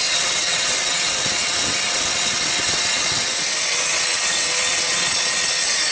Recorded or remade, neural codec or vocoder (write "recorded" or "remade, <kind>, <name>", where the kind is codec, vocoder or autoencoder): remade, vocoder, WaveNeXt